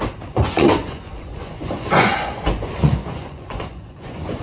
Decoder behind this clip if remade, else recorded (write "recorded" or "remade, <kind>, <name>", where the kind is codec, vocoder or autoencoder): remade, vocoder, Vocos